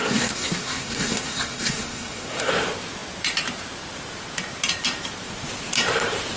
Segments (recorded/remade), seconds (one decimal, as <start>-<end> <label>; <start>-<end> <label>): 0.0-2.5 remade; 2.5-6.4 recorded